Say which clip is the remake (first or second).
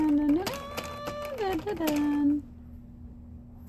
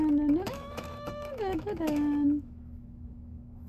second